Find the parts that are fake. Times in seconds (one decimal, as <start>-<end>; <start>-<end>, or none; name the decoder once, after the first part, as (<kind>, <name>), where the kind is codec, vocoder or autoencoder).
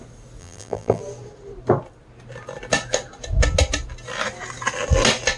0.4-1.0 (vocoder, BigVGAN v2)